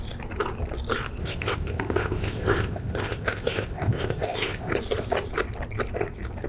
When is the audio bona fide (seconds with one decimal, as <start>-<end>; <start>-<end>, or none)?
0.0-1.2; 4.7-6.5

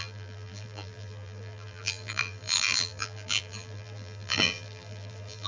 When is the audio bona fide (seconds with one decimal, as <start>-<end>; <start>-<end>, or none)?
none

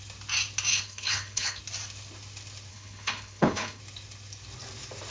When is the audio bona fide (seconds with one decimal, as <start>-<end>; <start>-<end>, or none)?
0.0-0.7; 1.6-2.7; 3.8-5.1

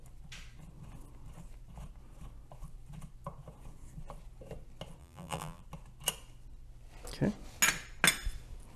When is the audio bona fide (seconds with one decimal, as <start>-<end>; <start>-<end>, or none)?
0.0-5.0; 5.6-8.8

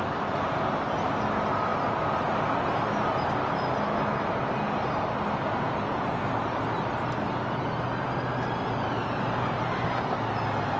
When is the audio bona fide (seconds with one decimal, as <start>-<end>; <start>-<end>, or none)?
0.0-10.8

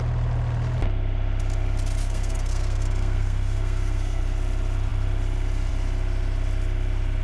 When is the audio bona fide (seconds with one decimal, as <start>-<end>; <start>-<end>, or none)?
0.0-2.0; 4.2-7.2